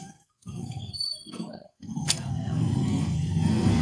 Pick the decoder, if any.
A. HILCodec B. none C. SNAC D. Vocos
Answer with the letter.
C